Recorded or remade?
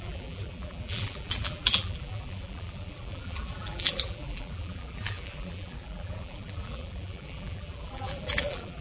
remade